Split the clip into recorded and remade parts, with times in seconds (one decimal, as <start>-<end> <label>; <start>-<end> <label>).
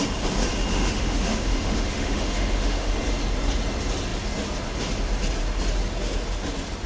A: 0.0-0.7 recorded; 0.7-2.9 remade; 2.9-6.9 recorded